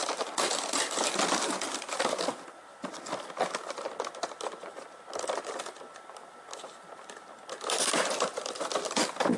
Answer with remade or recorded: recorded